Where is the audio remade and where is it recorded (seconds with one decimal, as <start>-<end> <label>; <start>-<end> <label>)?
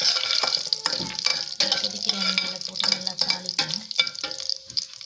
0.0-5.1 recorded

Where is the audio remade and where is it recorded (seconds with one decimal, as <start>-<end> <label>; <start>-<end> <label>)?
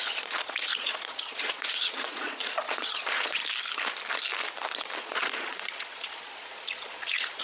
0.0-3.4 remade; 3.4-5.0 recorded; 5.0-7.4 remade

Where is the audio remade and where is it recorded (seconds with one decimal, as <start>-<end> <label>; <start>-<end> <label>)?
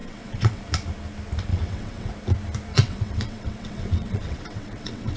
0.0-0.6 remade; 0.6-1.5 recorded; 1.5-2.1 remade; 2.1-2.7 recorded; 2.7-5.2 remade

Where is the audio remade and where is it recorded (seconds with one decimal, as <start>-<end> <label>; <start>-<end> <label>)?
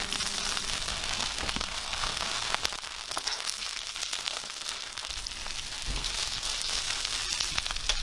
0.0-0.7 recorded; 0.7-5.1 remade; 5.1-5.7 recorded; 5.7-7.2 remade; 7.2-8.0 recorded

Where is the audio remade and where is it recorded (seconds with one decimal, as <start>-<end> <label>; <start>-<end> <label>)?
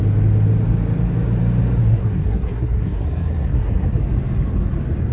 0.0-1.9 recorded; 1.9-4.0 remade; 4.0-5.1 recorded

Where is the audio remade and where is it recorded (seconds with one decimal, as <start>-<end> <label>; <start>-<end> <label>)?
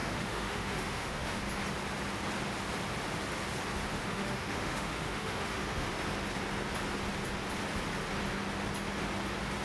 0.0-1.4 remade; 1.4-3.9 recorded; 3.9-5.9 remade; 5.9-9.6 recorded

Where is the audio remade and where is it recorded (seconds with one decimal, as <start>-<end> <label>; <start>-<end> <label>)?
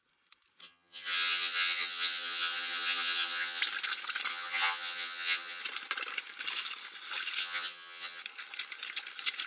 0.0-0.6 recorded; 0.6-3.6 remade; 3.6-4.3 recorded; 4.3-5.6 remade; 5.6-7.4 recorded; 7.4-8.2 remade; 8.2-9.5 recorded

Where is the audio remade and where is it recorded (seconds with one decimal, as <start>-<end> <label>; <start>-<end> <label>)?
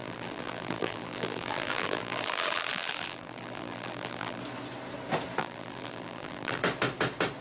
0.0-4.4 remade; 4.4-5.4 recorded; 5.4-6.6 remade; 6.6-7.4 recorded